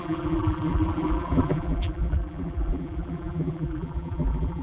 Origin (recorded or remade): remade